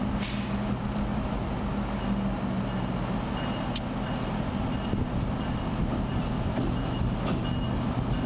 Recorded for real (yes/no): yes